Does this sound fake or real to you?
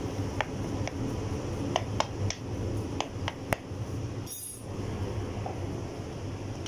real